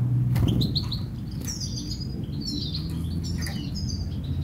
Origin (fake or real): real